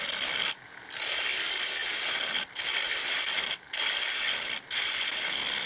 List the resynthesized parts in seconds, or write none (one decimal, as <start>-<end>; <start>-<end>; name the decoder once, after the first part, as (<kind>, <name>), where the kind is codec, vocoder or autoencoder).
none